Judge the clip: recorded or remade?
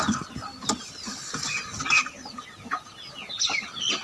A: recorded